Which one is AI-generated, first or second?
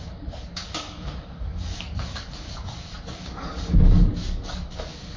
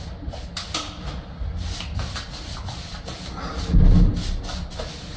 first